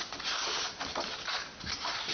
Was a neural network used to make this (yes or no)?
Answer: no